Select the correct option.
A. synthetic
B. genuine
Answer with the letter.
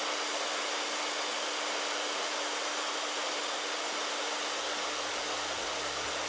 B